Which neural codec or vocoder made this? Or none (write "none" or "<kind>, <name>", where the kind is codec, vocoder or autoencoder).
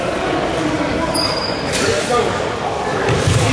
codec, DAC